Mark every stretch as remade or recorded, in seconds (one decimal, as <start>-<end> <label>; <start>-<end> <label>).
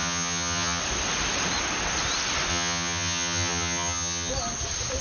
0.0-0.8 remade; 0.8-2.5 recorded; 2.5-4.3 remade; 4.3-5.0 recorded